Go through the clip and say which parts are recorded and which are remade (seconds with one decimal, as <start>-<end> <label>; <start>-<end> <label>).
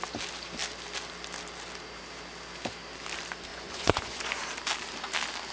0.0-3.5 recorded; 3.5-4.4 remade; 4.4-5.5 recorded